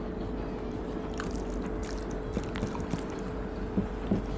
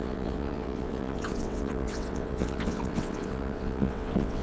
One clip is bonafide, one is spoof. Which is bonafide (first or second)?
first